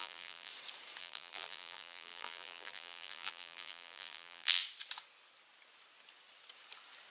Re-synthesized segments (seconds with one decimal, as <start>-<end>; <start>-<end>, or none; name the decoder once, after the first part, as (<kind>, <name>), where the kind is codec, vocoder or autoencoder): 0.0-0.5 (vocoder, BigVGAN v2); 1.0-4.6